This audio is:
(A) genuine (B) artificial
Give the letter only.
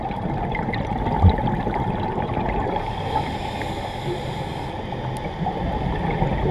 A